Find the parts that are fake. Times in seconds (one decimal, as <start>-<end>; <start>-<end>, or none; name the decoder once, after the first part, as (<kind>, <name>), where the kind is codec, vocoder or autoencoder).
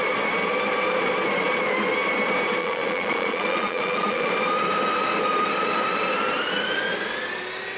2.6-4.3 (vocoder, Vocos)